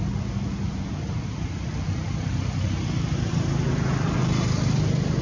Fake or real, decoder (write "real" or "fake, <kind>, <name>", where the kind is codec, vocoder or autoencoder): real